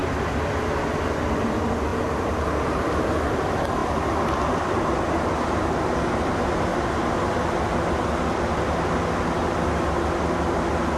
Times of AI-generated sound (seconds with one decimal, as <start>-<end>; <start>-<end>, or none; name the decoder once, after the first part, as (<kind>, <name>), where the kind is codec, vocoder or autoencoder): 1.9-3.4 (vocoder, BigVGAN v2); 3.8-5.8